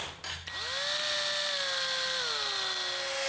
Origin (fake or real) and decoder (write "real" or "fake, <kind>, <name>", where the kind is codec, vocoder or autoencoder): real